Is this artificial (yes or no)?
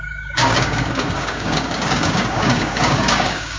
yes